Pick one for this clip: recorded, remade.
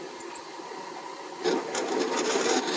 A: recorded